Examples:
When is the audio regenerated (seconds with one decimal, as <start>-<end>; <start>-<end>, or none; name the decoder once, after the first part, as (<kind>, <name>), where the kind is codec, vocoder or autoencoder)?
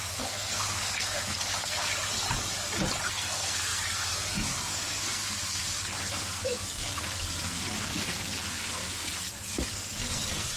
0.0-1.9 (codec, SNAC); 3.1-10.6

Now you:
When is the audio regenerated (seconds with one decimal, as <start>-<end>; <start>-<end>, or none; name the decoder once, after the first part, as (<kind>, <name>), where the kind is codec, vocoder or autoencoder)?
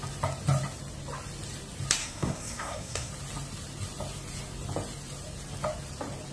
2.0-3.1 (codec, SNAC)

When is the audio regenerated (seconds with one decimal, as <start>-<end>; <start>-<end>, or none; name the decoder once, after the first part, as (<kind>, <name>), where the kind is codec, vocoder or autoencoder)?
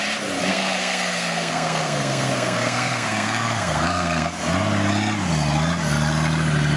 0.4-4.4 (codec, SNAC)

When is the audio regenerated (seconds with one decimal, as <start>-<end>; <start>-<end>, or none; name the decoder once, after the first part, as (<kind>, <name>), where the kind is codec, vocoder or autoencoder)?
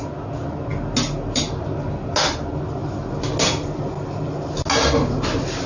none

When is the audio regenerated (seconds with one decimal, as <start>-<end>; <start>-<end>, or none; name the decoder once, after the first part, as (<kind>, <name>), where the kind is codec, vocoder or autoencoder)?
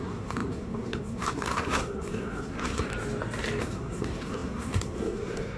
0.0-2.9 (codec, SNAC); 3.6-5.6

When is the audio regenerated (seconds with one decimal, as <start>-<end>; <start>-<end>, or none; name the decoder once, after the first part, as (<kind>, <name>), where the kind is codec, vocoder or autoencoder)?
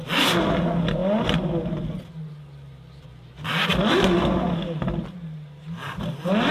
none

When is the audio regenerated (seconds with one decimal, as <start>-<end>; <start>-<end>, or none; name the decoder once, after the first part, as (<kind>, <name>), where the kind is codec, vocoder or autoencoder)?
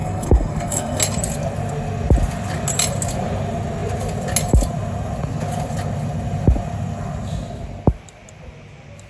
0.0-1.0 (codec, SNAC)